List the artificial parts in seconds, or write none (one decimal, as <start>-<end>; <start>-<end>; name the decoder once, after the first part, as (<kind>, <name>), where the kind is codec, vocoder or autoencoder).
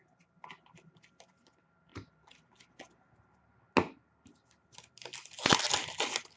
none